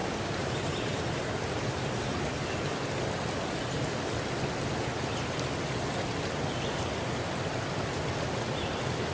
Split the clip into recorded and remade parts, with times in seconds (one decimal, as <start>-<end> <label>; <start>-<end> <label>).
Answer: 0.0-2.3 remade; 2.3-9.1 recorded